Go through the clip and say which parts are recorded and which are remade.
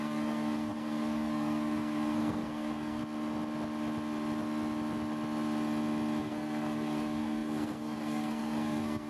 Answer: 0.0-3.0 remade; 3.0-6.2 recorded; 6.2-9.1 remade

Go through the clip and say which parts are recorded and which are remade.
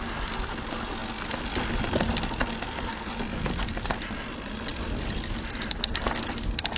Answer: 0.0-6.8 recorded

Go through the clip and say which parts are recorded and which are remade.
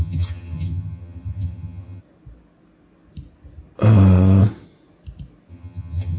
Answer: 0.0-2.0 remade; 2.0-5.5 recorded; 5.5-6.2 remade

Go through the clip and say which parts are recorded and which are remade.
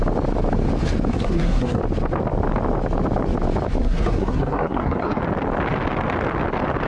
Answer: 0.0-1.1 recorded; 1.1-1.8 remade; 1.8-3.8 recorded; 3.8-5.2 remade; 5.2-6.9 recorded